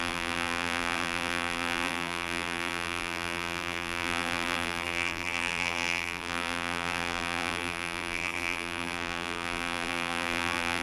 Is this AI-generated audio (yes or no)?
yes